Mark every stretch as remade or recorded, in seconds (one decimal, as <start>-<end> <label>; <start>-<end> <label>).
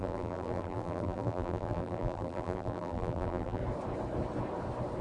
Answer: 0.0-3.6 remade; 3.6-5.0 recorded